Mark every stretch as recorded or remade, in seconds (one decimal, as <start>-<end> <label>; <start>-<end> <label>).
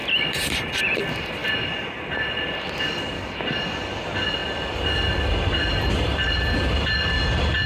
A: 0.0-0.7 remade; 0.7-7.7 recorded